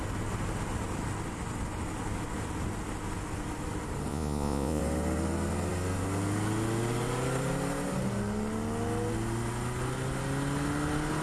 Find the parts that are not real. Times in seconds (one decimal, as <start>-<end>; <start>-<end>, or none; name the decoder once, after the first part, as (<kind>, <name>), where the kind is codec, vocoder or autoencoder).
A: 4.1-4.8 (vocoder, Vocos)